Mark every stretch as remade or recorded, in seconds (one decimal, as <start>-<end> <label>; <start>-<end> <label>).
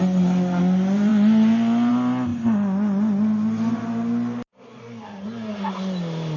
0.0-6.4 recorded